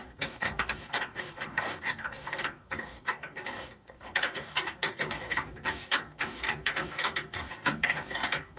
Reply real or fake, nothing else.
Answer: fake